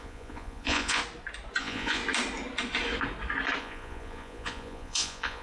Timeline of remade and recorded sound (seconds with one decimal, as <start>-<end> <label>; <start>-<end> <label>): 0.0-1.0 remade; 1.0-1.6 recorded; 1.6-2.0 remade; 2.0-3.6 recorded; 3.6-5.4 remade